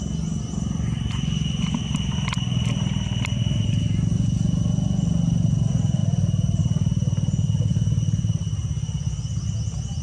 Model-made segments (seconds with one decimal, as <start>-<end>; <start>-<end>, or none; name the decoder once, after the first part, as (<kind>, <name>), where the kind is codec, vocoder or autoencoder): none